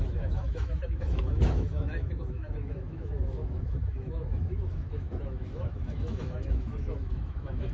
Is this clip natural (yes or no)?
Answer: no